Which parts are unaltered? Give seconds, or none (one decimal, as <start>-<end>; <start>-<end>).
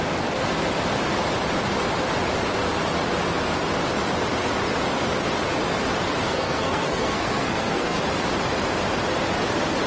0.0-6.2; 8.0-9.9